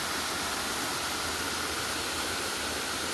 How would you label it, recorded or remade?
recorded